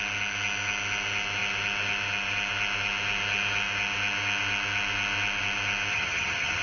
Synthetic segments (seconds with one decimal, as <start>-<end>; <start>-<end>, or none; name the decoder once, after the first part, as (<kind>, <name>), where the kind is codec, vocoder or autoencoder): 5.9-6.6 (vocoder, HiFi-GAN)